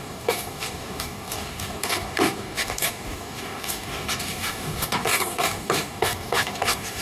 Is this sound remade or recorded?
remade